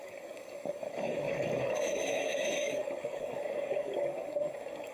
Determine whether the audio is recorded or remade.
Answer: remade